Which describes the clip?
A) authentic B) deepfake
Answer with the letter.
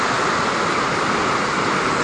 A